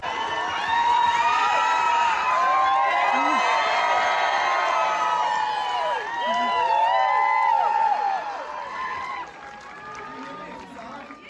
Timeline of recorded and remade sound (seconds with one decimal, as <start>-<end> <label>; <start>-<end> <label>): 0.0-0.7 recorded; 0.7-2.9 remade; 2.9-4.8 recorded; 4.8-9.1 remade; 9.1-11.3 recorded